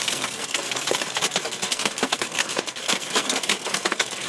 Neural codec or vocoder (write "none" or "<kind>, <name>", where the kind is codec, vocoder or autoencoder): codec, SNAC